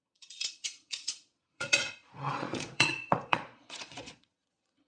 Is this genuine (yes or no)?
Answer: no